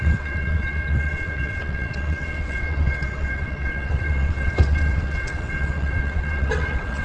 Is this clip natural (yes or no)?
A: no